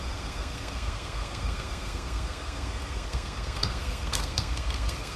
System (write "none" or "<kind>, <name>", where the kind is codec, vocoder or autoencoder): codec, SNAC